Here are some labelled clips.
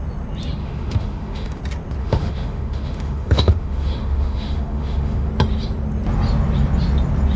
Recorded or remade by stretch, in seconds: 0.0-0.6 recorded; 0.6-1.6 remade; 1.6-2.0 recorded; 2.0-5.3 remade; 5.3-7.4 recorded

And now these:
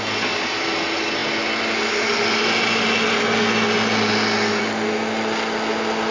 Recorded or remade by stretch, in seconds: 0.0-6.1 recorded

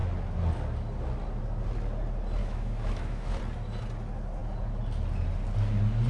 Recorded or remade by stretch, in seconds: 0.0-2.4 recorded; 2.4-3.4 remade; 3.4-6.1 recorded

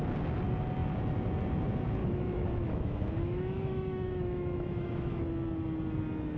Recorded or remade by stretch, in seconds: 0.0-2.0 recorded; 2.0-5.2 remade; 5.2-6.4 recorded

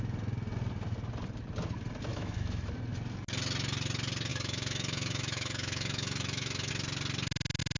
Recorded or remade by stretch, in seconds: 0.0-2.1 recorded; 2.1-2.7 remade; 2.7-4.3 recorded; 4.3-6.7 remade; 6.7-7.8 recorded

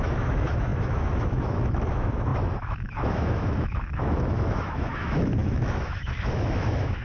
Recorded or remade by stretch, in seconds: 0.0-7.0 remade

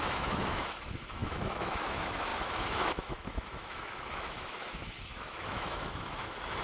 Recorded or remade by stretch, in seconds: 0.0-6.6 remade

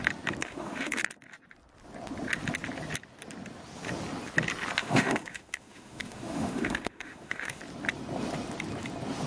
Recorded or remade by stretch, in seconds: 0.0-0.4 recorded; 0.4-1.0 remade; 1.0-4.8 recorded; 4.8-7.6 remade; 7.6-9.3 recorded